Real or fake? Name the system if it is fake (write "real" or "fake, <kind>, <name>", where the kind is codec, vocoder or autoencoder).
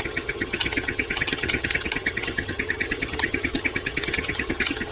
fake, vocoder, HiFi-GAN